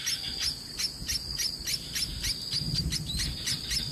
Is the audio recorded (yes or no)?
yes